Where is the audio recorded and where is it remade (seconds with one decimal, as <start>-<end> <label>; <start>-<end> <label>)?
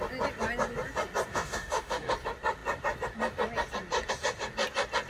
0.0-1.3 recorded; 1.3-2.1 remade; 2.1-5.1 recorded